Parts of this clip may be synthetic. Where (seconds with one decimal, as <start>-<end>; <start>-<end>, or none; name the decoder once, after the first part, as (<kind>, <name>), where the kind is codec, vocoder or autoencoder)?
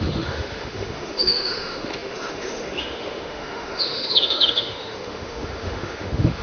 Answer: 0.0-6.4 (autoencoder, DAC-VAE)